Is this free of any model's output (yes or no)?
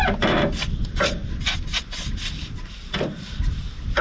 yes